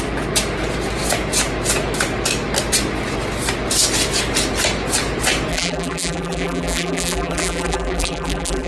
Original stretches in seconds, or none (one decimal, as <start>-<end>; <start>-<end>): 0.0-5.5